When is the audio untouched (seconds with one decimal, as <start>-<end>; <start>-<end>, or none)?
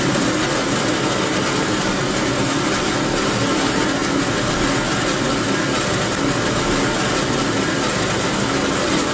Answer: 0.0-9.1